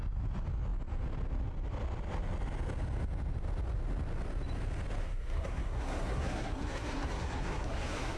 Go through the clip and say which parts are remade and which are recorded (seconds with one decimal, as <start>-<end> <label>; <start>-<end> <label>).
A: 0.0-5.0 recorded; 5.0-8.2 remade

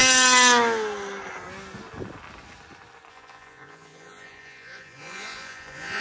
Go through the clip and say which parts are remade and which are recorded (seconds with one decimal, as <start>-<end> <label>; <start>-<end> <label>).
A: 0.0-3.1 recorded; 3.1-6.0 remade

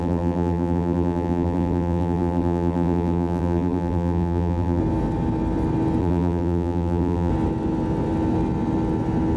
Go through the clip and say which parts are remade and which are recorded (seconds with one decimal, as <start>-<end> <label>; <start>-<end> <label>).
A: 0.0-4.8 remade; 4.8-6.0 recorded; 6.0-7.3 remade; 7.3-9.4 recorded

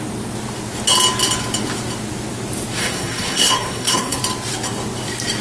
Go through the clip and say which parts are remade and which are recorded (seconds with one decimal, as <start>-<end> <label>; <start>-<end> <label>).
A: 0.0-2.8 recorded; 2.8-4.2 remade; 4.2-5.4 recorded